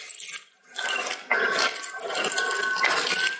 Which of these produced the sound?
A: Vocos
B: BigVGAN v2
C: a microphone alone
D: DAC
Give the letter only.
C